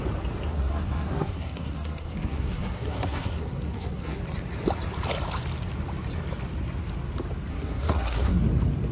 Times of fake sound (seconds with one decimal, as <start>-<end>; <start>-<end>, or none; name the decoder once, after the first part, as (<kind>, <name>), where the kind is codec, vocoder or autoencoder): 0.5-4.2 (codec, SNAC); 7.5-8.4